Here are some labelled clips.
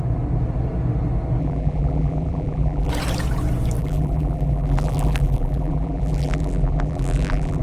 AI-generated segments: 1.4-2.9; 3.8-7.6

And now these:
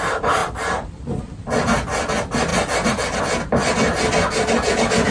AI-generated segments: 0.4-1.2